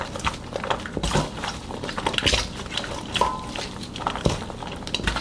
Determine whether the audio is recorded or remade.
recorded